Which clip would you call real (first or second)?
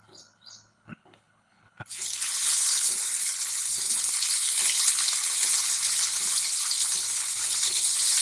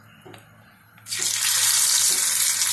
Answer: second